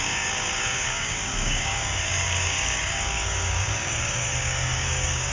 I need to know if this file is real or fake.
fake